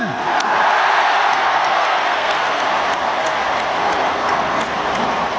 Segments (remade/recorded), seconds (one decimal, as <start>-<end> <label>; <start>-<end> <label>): 0.0-1.3 recorded; 1.3-2.6 remade; 2.6-4.1 recorded; 4.1-4.6 remade; 4.6-5.4 recorded